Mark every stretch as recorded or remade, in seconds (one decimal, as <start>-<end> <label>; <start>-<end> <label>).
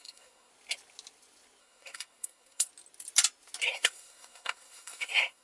0.0-0.5 remade; 0.5-1.6 recorded; 1.6-2.7 remade; 2.7-3.7 recorded; 3.7-5.4 remade